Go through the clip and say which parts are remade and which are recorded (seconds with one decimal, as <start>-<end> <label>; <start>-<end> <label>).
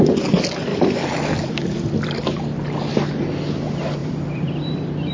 0.0-0.7 recorded; 0.7-2.4 remade; 2.4-4.0 recorded; 4.0-5.1 remade